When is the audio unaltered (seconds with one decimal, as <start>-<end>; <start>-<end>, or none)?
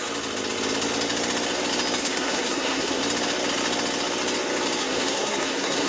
0.0-2.0; 3.0-4.8